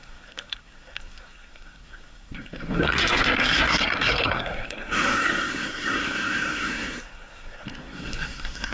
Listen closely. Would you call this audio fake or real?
fake